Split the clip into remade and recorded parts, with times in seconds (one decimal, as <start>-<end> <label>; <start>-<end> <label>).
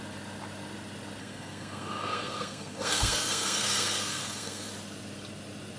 0.0-1.2 recorded; 1.2-4.7 remade; 4.7-5.8 recorded